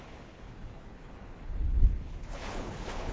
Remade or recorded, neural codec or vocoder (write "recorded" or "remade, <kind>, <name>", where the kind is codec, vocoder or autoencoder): remade, codec, HILCodec